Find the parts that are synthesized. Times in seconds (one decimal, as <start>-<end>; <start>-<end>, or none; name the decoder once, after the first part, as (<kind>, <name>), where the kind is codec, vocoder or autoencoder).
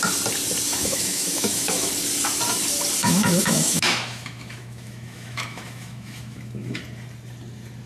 0.7-1.9 (autoencoder, DAC-VAE); 3.0-6.8